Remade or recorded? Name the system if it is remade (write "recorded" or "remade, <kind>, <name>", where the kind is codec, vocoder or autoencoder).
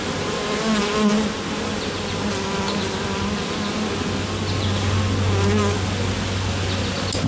recorded